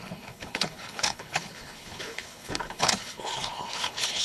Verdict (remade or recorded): remade